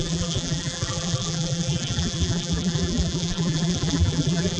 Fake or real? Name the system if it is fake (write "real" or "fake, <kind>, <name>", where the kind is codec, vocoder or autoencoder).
fake, vocoder, BigVGAN v2